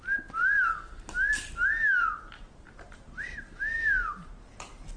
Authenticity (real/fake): real